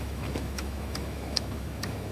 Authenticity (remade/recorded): remade